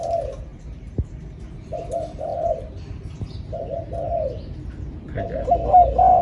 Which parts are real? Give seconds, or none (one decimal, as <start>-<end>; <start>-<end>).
0.0-0.5; 1.1-2.3